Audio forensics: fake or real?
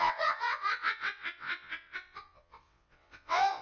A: fake